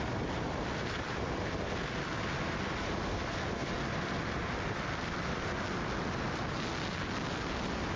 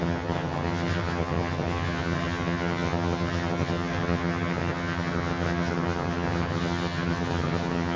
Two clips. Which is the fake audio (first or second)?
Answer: second